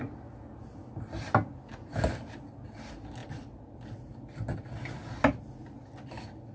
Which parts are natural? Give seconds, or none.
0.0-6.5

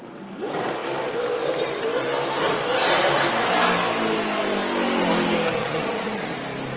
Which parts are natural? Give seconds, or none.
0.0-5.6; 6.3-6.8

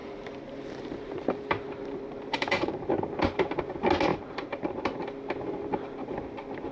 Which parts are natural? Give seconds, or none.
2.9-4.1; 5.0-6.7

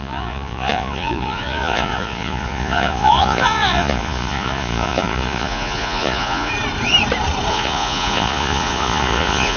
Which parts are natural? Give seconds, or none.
6.5-7.5

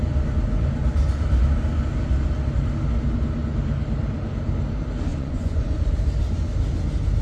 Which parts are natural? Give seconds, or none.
0.0-5.1; 5.9-7.2